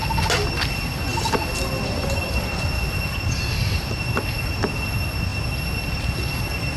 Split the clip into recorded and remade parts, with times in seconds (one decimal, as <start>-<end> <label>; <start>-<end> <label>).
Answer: 0.0-6.8 recorded

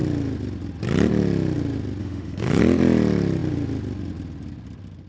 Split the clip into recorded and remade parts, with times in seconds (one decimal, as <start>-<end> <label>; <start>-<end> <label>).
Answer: 0.0-2.0 recorded; 2.0-2.6 remade; 2.6-5.1 recorded

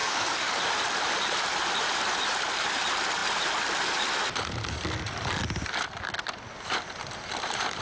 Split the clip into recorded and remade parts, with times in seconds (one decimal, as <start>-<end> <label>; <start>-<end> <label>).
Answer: 0.0-0.6 remade; 0.6-7.8 recorded